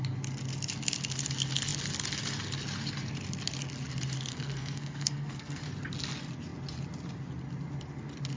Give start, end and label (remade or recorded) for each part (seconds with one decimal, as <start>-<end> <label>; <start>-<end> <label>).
0.0-4.3 recorded; 4.3-5.6 remade; 5.6-8.4 recorded